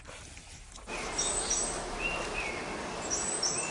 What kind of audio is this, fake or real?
real